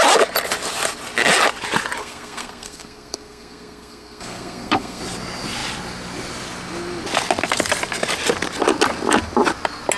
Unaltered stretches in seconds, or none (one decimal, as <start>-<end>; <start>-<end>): 0.0-2.0; 5.0-10.0